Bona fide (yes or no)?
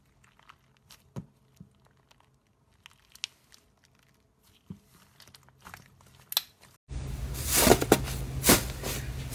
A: yes